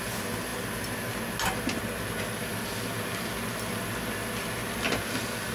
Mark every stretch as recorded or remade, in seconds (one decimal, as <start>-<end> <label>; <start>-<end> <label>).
0.0-5.5 recorded